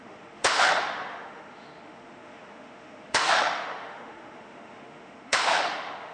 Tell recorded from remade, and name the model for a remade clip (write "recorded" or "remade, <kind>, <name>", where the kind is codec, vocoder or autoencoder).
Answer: remade, autoencoder, DAC-VAE